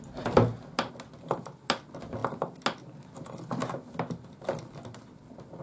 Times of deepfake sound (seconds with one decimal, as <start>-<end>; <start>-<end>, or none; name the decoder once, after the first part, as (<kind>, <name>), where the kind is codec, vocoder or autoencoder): none